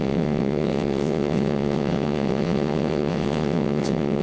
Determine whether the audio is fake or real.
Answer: fake